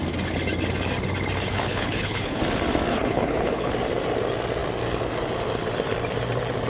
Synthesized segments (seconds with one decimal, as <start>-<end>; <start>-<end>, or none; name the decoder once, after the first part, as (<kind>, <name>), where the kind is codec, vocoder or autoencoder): 1.5-2.4 (codec, HILCodec); 2.9-3.7